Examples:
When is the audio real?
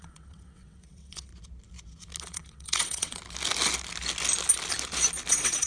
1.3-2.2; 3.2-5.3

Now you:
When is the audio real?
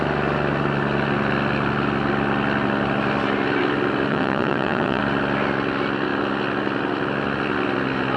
0.0-4.1; 5.0-8.2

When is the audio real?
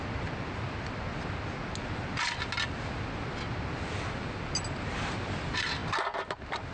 0.0-6.7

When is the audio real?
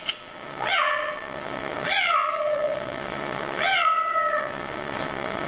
none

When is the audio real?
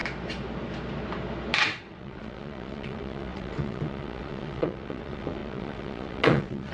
0.0-1.6